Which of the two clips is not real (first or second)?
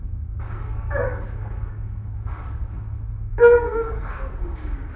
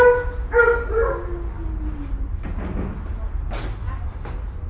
first